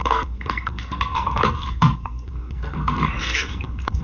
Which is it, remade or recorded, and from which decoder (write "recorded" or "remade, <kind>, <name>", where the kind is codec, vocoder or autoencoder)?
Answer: remade, codec, SNAC